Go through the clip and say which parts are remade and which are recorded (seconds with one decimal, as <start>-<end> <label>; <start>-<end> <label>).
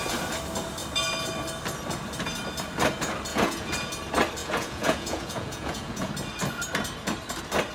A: 0.0-3.3 recorded; 3.3-3.9 remade; 3.9-4.4 recorded; 4.4-6.1 remade; 6.1-7.7 recorded